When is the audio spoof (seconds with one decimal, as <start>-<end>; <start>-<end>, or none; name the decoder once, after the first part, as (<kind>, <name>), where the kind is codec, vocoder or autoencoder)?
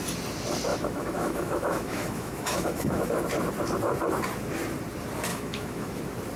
0.7-3.2 (autoencoder, DAC-VAE); 5.3-6.0